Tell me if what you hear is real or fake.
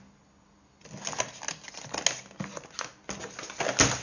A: real